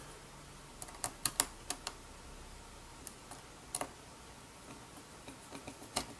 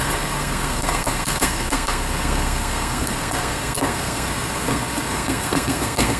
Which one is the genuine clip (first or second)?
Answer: first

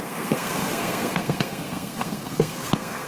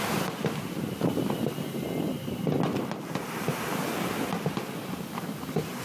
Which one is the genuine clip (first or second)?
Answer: second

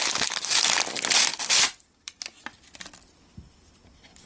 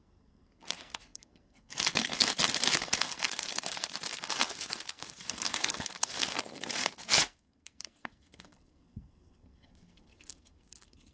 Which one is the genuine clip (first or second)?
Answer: first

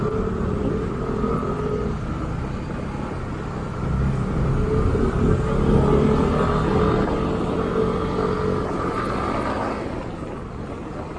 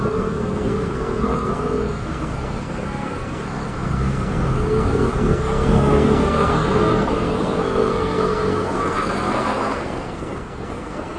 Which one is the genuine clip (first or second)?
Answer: first